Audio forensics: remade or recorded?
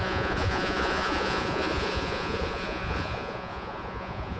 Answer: remade